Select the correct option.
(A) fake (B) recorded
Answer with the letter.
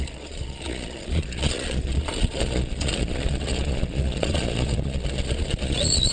A